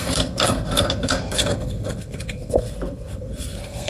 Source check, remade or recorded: remade